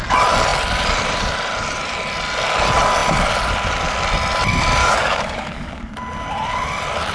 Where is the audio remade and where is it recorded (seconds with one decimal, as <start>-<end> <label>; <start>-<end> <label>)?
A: 0.0-4.8 recorded; 4.8-5.9 remade; 5.9-7.1 recorded